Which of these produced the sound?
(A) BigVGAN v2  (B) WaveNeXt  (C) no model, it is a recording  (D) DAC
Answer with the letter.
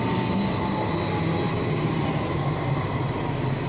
C